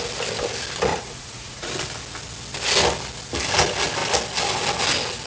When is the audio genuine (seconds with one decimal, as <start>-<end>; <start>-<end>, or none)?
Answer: 0.0-0.9; 1.7-5.3